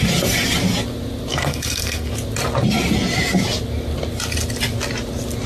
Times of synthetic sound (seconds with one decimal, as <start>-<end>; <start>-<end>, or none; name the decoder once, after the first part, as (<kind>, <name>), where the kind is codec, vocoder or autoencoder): 1.3-2.1 (codec, SNAC)